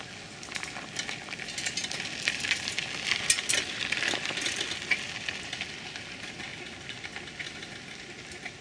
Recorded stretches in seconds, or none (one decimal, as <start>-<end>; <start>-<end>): 0.0-8.6